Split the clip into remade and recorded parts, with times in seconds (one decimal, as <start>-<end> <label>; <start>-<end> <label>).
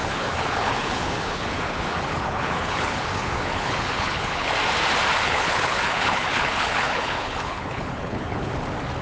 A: 0.0-4.5 remade; 4.5-5.1 recorded; 5.1-8.5 remade; 8.5-9.0 recorded